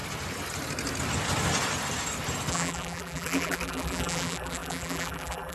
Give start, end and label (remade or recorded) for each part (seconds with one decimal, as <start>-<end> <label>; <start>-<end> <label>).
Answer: 0.0-2.5 recorded; 2.5-5.5 remade